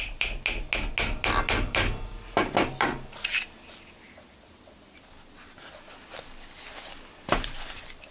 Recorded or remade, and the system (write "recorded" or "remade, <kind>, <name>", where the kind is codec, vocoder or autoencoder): recorded